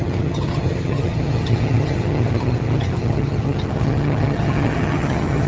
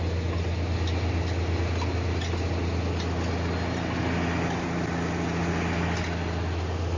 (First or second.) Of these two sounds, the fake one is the first